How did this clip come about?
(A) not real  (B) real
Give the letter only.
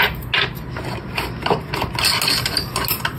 B